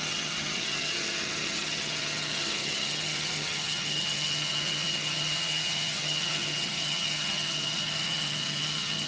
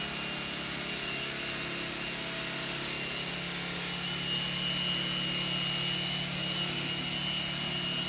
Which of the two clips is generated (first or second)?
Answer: first